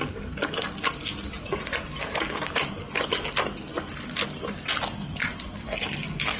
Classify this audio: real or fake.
real